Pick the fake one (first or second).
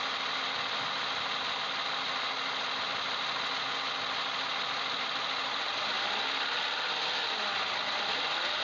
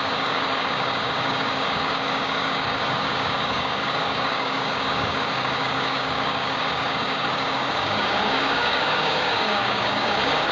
second